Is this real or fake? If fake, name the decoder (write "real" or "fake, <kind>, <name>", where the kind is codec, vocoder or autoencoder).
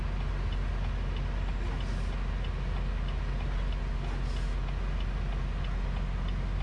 real